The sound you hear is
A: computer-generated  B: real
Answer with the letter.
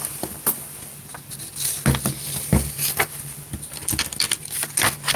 B